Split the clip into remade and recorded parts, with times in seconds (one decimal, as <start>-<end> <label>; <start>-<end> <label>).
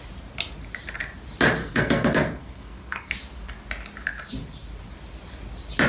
0.0-1.6 recorded; 1.6-3.1 remade; 3.1-5.9 recorded